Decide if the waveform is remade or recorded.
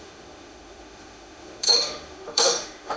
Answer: remade